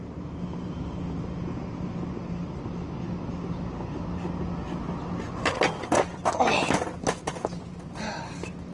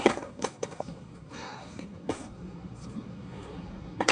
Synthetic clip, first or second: second